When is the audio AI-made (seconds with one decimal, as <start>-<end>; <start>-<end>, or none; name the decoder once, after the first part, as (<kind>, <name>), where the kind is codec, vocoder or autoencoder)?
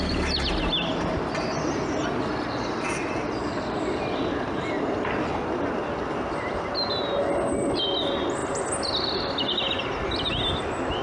none